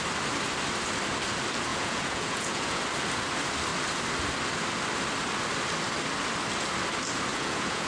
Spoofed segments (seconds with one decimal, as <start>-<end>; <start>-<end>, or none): 1.7-2.8; 7.3-7.9